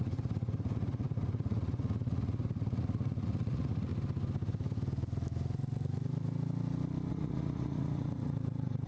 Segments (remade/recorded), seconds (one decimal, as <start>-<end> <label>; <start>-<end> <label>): 0.0-3.9 remade; 3.9-7.1 recorded; 7.1-8.9 remade